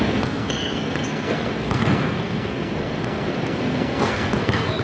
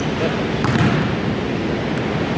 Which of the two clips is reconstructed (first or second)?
first